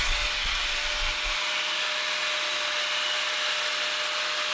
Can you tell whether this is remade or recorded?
recorded